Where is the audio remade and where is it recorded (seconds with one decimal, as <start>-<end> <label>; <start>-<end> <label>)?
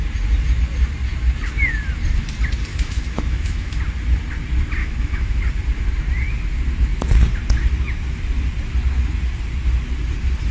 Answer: 0.0-2.7 recorded; 2.7-3.8 remade; 3.8-4.8 recorded; 4.8-5.4 remade; 5.4-10.5 recorded